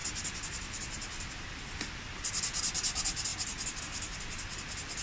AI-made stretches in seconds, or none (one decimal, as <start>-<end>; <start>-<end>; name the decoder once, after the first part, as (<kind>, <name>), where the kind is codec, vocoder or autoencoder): none